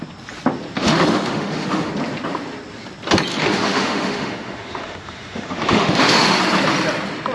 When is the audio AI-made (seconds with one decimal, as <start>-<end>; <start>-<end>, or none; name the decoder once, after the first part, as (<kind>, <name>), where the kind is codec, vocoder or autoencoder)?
0.8-1.9 (autoencoder, DAC-VAE); 3.3-6.4

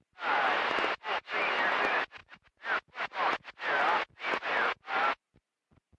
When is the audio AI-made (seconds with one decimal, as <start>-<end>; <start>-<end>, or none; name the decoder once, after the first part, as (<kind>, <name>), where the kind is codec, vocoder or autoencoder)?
none

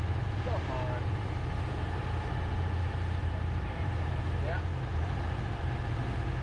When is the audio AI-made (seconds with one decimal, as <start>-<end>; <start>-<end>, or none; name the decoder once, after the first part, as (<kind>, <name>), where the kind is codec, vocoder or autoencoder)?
3.2-4.2 (vocoder, BigVGAN v2); 4.7-5.7

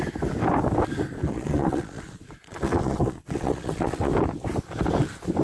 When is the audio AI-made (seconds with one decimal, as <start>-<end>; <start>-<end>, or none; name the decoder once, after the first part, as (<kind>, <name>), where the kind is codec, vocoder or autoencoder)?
1.2-4.1 (vocoder, Vocos)

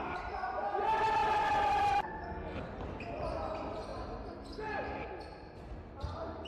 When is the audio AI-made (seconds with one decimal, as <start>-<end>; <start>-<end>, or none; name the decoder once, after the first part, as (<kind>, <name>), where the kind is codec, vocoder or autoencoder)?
none